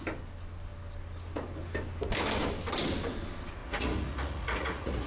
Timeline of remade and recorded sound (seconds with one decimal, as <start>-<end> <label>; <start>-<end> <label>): 0.0-3.6 recorded; 3.6-5.1 remade